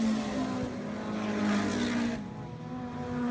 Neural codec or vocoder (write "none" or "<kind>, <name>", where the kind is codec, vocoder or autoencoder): none